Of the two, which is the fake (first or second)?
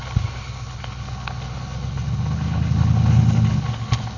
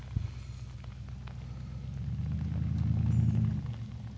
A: first